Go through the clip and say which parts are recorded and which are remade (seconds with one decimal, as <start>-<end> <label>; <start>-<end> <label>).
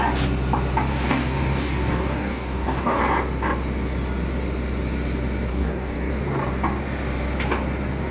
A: 0.0-0.9 recorded; 0.9-3.0 remade; 3.0-5.5 recorded; 5.5-6.1 remade; 6.1-8.1 recorded